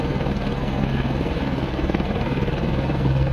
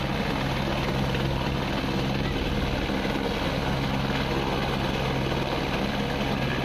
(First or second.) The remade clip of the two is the first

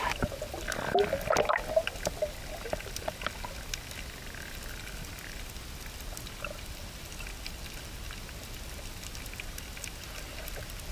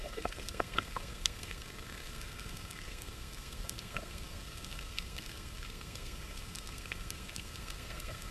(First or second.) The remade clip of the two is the second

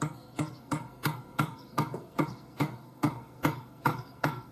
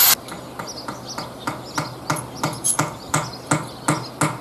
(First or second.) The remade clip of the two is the first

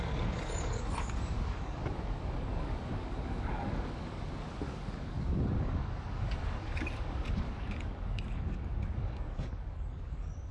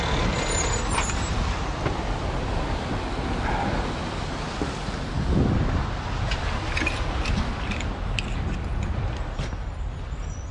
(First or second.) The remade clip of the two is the first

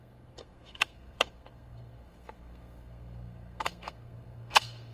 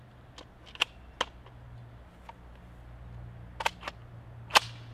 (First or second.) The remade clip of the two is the first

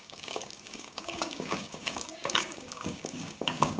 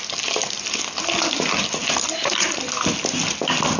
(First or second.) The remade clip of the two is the first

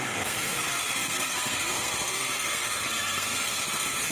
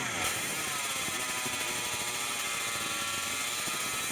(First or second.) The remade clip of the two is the first